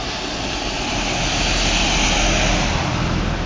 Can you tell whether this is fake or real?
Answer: real